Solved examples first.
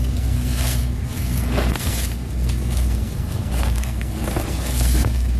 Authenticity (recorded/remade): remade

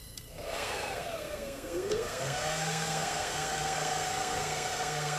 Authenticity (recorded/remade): remade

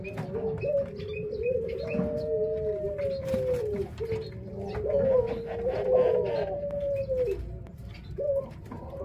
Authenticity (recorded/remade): recorded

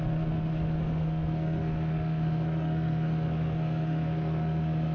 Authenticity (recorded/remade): remade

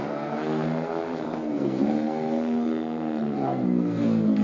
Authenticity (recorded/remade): remade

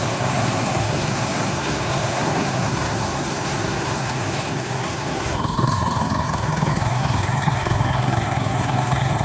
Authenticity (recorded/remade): remade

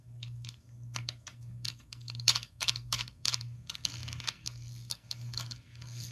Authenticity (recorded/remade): remade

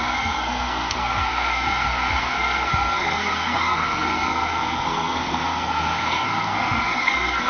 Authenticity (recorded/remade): remade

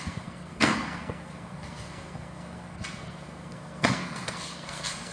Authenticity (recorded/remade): remade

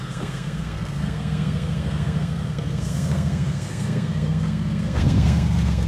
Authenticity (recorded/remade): remade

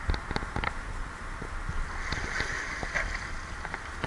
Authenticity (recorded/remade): recorded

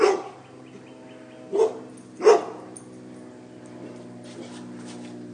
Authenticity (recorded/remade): recorded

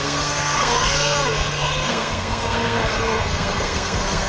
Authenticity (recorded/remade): remade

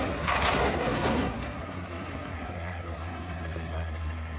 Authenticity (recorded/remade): remade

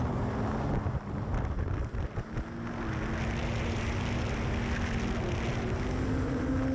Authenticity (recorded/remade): recorded